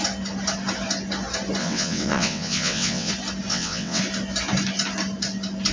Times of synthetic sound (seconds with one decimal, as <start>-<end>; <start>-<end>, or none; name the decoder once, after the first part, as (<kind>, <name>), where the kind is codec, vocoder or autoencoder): 1.6-3.1 (vocoder, WaveNeXt); 3.5-4.0

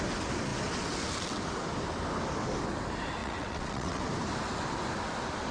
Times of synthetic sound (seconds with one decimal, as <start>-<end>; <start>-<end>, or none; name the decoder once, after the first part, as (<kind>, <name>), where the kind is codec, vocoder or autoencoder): 3.2-4.0 (vocoder, WaveNeXt)

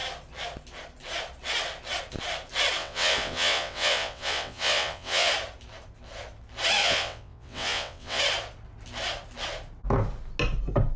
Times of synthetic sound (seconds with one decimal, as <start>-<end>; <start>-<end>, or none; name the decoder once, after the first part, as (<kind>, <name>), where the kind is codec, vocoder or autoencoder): 2.8-5.3 (vocoder, WaveNeXt); 6.8-8.2

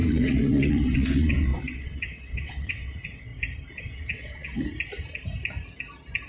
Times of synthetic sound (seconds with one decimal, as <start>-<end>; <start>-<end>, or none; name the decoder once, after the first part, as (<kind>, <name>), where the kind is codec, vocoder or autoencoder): 0.0-3.3 (vocoder, WaveNeXt); 3.8-4.7

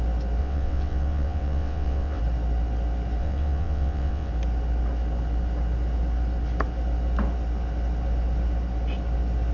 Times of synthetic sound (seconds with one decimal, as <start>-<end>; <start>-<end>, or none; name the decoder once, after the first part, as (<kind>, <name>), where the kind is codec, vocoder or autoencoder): 0.4-2.2 (vocoder, WaveNeXt); 3.2-4.3

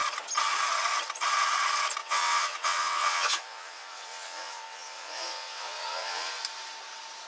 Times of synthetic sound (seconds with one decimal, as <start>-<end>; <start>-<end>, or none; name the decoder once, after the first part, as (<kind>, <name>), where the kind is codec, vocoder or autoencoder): 2.0-6.4 (vocoder, WaveNeXt)

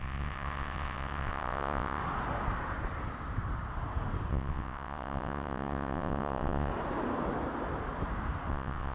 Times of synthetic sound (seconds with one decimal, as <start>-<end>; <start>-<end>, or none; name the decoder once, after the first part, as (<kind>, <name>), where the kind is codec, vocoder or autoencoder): 0.0-2.0 (vocoder, WaveNeXt); 4.3-6.7; 8.5-8.9

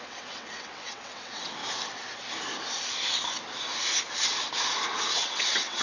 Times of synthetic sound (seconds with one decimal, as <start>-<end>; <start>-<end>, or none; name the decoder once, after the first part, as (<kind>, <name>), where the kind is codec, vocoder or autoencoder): 0.0-1.6 (vocoder, WaveNeXt); 5.1-5.8